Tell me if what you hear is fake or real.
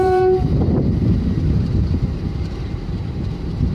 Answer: fake